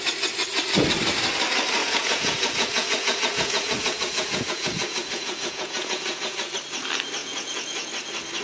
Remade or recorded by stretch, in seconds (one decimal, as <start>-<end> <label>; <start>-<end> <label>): 0.0-1.8 recorded; 1.8-6.5 remade; 6.5-7.2 recorded; 7.2-7.9 remade; 7.9-8.4 recorded